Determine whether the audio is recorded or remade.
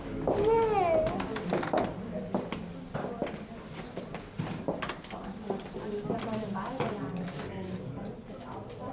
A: recorded